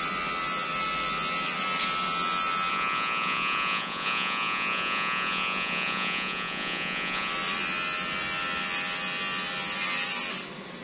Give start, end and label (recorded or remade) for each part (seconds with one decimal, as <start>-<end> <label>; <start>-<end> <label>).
0.0-2.7 recorded; 2.7-7.3 remade; 7.3-10.8 recorded

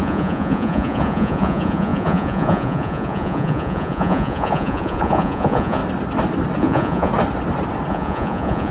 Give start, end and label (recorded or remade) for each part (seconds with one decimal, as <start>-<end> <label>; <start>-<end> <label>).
0.0-5.8 remade; 5.8-6.6 recorded; 6.6-7.1 remade; 7.1-7.9 recorded; 7.9-8.7 remade

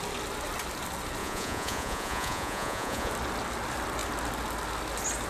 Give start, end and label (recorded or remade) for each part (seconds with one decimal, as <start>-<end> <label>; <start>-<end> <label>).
0.0-1.2 recorded; 1.2-3.1 remade; 3.1-5.3 recorded

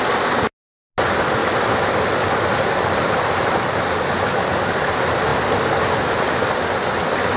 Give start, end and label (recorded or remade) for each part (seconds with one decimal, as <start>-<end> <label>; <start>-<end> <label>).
0.0-7.4 recorded

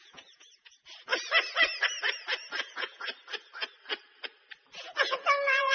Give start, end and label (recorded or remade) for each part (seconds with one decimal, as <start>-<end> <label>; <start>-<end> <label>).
0.0-1.1 remade; 1.1-2.6 recorded; 2.6-3.1 remade; 3.1-4.8 recorded; 4.8-5.7 remade

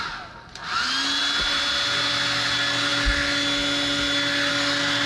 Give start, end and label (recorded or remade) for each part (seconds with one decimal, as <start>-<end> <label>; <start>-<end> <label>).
0.0-5.1 recorded

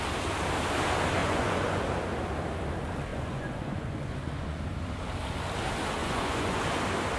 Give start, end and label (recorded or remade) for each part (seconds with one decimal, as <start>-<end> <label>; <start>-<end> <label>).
0.0-1.2 recorded; 1.2-1.8 remade; 1.8-3.1 recorded; 3.1-4.6 remade; 4.6-6.0 recorded; 6.0-6.6 remade; 6.6-7.2 recorded